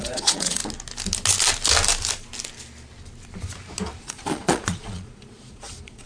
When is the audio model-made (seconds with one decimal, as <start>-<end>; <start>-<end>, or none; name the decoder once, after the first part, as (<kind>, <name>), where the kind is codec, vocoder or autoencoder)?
0.0-0.6 (vocoder, Vocos); 4.0-6.1